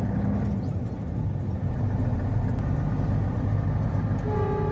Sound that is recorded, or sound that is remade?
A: recorded